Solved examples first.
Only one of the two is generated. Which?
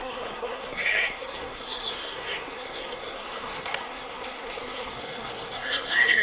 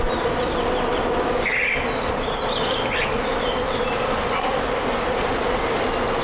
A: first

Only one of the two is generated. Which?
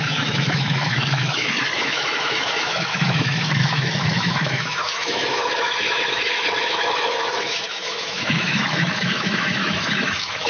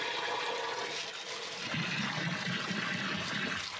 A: first